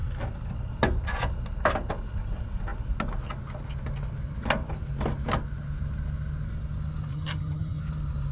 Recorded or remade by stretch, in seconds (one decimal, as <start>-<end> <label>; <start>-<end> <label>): 0.0-7.1 recorded; 7.1-7.8 remade; 7.8-8.3 recorded